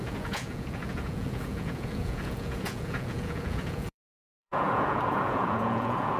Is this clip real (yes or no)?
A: no